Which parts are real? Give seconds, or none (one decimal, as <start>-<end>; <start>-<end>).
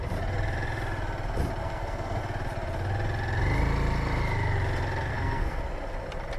0.0-1.6; 2.2-5.1; 5.6-6.4